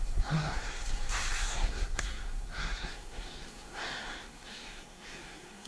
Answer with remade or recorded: remade